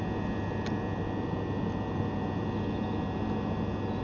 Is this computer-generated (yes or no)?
no